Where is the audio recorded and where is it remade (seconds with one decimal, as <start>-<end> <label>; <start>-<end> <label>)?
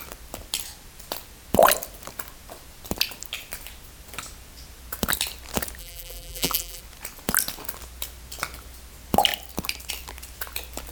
0.0-5.8 recorded; 5.8-6.8 remade; 6.8-10.9 recorded